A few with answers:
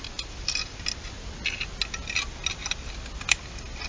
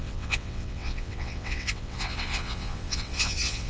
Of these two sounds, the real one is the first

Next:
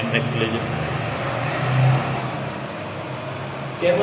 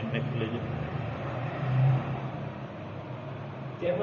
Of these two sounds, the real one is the first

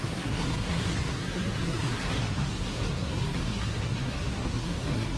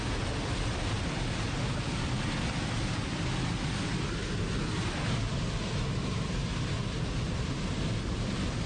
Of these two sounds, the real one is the second